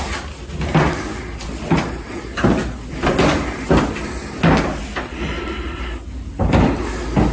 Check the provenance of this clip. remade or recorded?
recorded